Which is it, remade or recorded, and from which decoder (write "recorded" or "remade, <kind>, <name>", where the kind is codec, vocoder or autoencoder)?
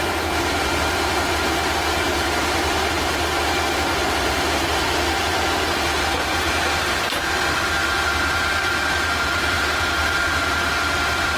remade, vocoder, BigVGAN v2